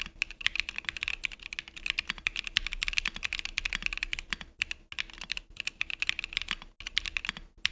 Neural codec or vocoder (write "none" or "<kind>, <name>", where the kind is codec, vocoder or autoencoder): none